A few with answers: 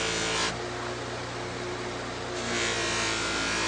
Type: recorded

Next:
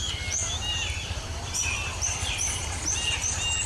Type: recorded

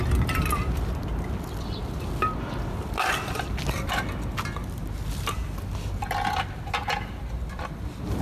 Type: recorded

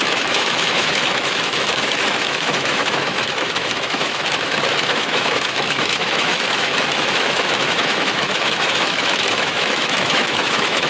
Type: remade